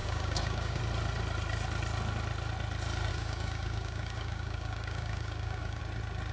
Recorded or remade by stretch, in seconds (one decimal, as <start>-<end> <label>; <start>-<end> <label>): 0.0-0.8 remade; 0.8-3.1 recorded; 3.1-5.8 remade; 5.8-6.3 recorded